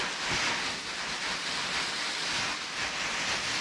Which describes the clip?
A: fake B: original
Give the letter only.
B